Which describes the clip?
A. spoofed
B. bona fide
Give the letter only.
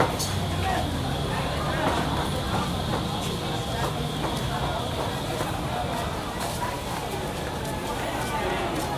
B